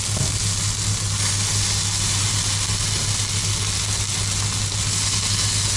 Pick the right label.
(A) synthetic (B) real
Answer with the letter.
B